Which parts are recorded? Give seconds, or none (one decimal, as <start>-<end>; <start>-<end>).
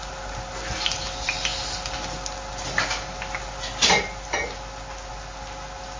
0.0-6.0